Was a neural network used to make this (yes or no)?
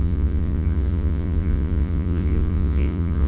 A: yes